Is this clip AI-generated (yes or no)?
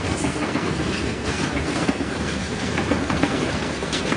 yes